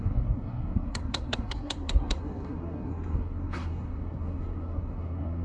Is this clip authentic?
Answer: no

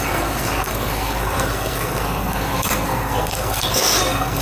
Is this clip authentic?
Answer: no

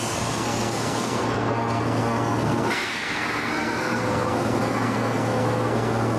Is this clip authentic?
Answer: no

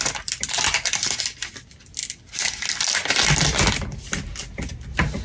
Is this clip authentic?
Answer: yes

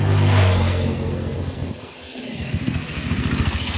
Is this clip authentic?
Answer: no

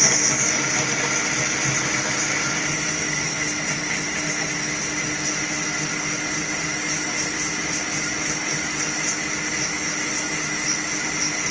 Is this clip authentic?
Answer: yes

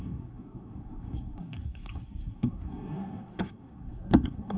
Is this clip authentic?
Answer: no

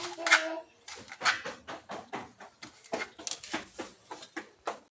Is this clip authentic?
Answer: yes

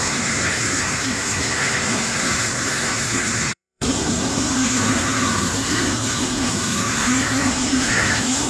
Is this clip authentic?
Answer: no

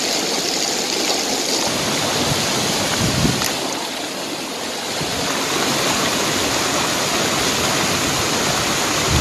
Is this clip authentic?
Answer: yes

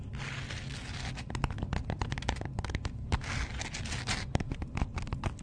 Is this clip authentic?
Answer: yes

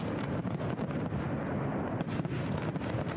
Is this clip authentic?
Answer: yes